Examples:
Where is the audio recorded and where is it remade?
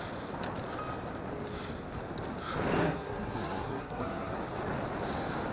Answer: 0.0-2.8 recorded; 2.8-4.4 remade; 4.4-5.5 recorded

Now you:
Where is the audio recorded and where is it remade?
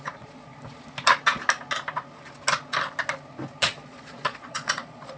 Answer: 0.0-0.5 remade; 0.5-3.6 recorded; 3.6-5.2 remade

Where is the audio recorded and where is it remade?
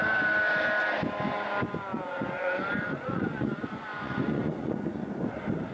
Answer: 0.0-1.9 recorded; 1.9-5.1 remade; 5.1-5.7 recorded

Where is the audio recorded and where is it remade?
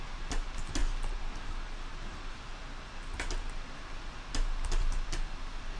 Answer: 0.0-5.8 recorded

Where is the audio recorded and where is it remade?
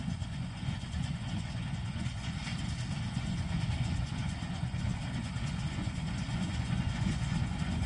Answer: 0.0-2.5 remade; 2.5-3.1 recorded; 3.1-7.9 remade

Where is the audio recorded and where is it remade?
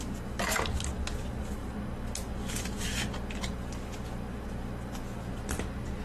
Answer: 0.0-6.0 recorded